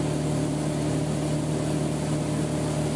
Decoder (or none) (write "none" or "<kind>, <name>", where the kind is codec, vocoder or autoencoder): none